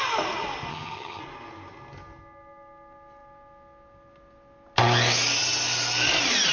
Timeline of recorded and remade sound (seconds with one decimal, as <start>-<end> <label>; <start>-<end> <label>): 0.0-0.7 recorded; 0.7-1.2 remade; 1.2-6.5 recorded